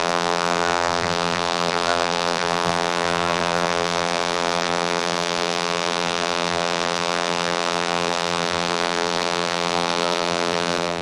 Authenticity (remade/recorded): remade